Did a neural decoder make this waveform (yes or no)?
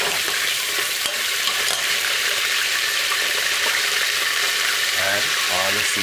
yes